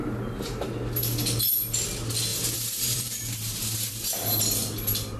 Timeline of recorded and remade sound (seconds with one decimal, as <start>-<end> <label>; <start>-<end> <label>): 0.0-0.7 remade; 0.7-2.3 recorded; 2.3-4.4 remade; 4.4-5.2 recorded